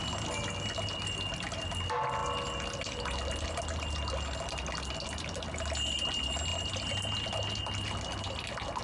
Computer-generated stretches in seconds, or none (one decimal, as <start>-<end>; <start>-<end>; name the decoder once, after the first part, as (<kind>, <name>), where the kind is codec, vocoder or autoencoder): none